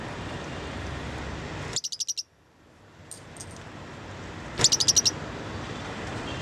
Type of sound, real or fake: real